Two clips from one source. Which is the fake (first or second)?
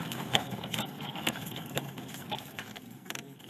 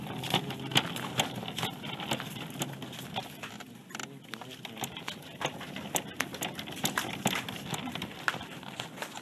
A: first